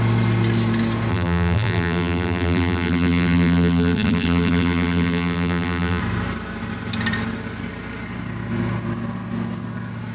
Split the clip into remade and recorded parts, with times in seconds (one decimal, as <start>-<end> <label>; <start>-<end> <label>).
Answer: 0.0-1.1 recorded; 1.1-6.0 remade; 6.0-10.1 recorded